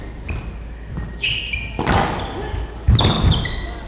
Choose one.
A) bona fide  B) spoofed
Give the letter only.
A